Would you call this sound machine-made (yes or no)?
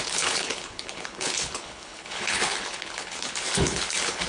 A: yes